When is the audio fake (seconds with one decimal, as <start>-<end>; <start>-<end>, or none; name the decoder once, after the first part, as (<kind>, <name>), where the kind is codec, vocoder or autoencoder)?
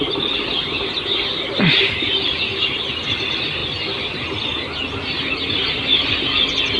none